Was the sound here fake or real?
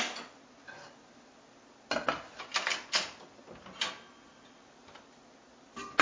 real